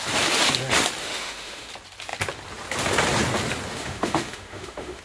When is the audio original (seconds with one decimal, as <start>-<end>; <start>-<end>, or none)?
0.0-1.0; 1.7-3.7